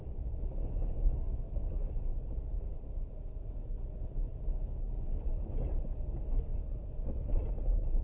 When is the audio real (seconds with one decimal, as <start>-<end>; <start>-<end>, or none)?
0.0-2.1; 3.5-6.5